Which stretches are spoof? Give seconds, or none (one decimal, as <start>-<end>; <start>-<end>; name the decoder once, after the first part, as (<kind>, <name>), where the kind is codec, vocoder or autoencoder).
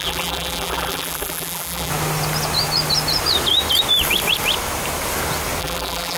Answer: 0.0-1.9 (vocoder, BigVGAN v2); 5.6-6.2